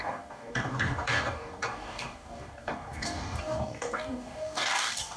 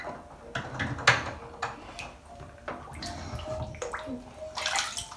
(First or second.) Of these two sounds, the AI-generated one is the first